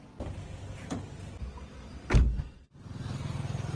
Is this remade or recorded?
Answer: recorded